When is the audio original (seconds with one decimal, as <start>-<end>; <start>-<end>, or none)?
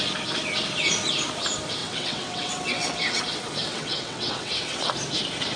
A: 0.0-1.8; 3.2-3.7; 4.9-5.6